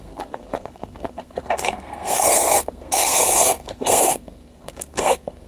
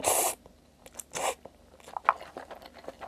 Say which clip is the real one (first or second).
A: second